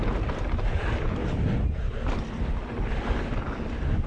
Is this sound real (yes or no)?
yes